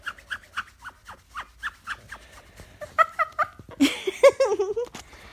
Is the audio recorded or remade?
recorded